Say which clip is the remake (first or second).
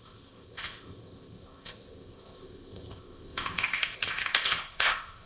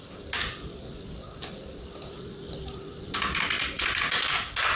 first